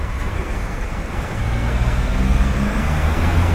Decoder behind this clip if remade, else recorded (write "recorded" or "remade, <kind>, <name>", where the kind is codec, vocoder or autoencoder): remade, codec, SNAC